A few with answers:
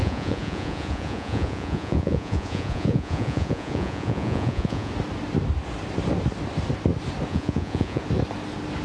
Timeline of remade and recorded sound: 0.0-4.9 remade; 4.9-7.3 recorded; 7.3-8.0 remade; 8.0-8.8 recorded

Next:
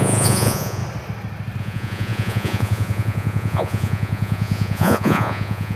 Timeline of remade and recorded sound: 0.0-0.8 remade; 0.8-1.6 recorded; 1.6-5.8 remade